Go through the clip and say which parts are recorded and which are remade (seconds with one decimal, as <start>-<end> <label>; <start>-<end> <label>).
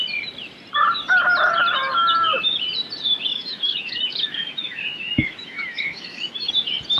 0.0-3.3 recorded; 3.3-6.5 remade; 6.5-7.0 recorded